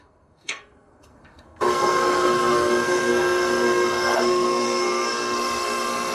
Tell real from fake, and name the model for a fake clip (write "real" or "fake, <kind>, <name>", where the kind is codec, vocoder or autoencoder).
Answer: fake, codec, SNAC